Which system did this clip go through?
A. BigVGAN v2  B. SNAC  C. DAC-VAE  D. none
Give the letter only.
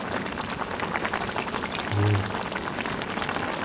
D